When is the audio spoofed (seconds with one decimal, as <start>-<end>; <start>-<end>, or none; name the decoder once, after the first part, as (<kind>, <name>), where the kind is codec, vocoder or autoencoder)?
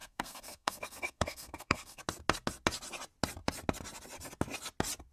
0.0-2.0 (codec, SNAC)